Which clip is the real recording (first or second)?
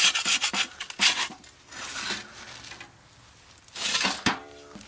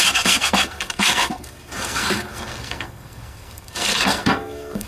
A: first